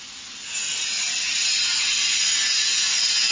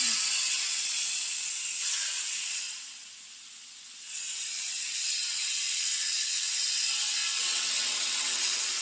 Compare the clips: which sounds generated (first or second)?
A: second